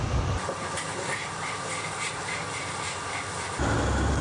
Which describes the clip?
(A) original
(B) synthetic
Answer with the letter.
A